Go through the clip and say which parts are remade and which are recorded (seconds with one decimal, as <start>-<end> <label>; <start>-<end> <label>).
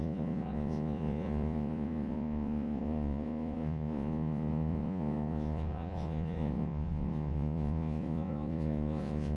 0.0-9.4 remade